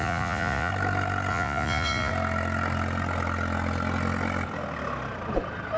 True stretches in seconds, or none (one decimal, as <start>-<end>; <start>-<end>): 0.7-1.3; 2.1-5.8